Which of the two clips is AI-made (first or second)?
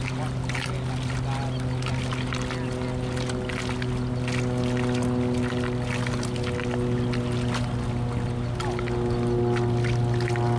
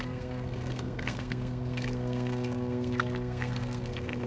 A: second